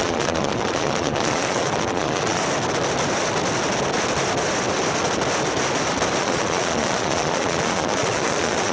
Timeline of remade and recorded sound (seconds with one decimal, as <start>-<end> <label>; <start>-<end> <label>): 0.0-2.4 remade; 2.4-6.2 recorded; 6.2-8.7 remade